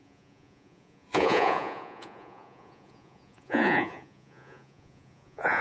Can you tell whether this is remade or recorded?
remade